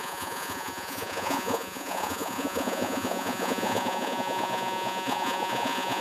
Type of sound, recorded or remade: remade